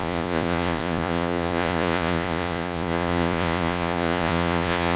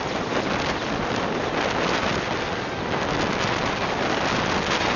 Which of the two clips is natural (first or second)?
second